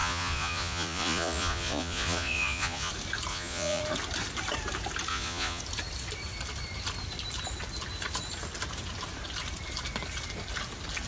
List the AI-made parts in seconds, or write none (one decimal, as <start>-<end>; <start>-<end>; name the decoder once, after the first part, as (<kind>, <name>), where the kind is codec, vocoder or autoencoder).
0.0-2.9 (vocoder, Vocos); 3.3-3.8; 5.1-5.6